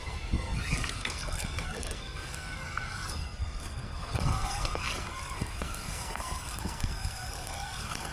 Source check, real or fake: fake